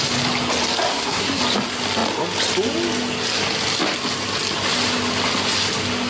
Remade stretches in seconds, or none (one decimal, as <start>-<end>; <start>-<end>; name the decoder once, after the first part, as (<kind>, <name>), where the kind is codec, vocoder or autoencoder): 0.9-1.4 (codec, SNAC)